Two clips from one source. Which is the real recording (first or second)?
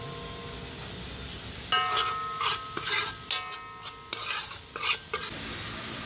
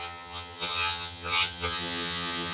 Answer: first